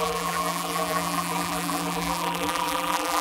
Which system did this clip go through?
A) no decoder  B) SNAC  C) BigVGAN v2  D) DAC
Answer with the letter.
C